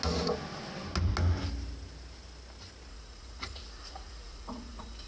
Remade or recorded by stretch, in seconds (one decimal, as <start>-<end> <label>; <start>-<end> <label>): 0.0-2.9 recorded; 2.9-5.1 remade